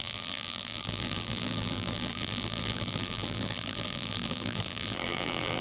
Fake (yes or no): yes